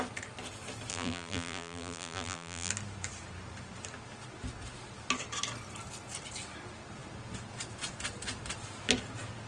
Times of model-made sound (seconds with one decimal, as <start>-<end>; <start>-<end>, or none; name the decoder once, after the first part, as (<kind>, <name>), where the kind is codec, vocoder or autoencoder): 0.9-2.7 (vocoder, BigVGAN v2)